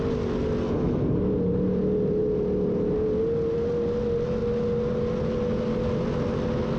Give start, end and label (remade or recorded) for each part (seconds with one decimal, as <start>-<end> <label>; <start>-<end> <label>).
0.0-0.6 recorded; 0.6-1.2 remade; 1.2-6.8 recorded